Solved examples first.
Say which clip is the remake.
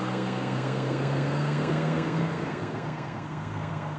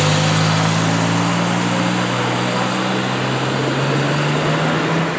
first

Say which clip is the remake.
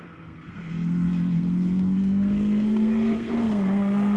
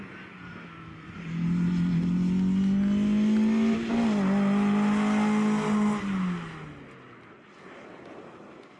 first